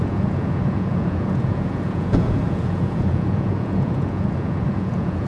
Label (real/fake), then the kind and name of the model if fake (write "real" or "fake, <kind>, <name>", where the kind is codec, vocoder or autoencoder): fake, vocoder, Vocos